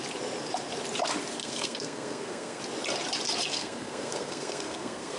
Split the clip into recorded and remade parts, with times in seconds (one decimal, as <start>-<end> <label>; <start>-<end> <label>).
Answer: 0.0-1.4 recorded; 1.4-2.6 remade; 2.6-3.5 recorded; 3.5-5.2 remade